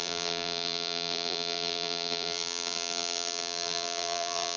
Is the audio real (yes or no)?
no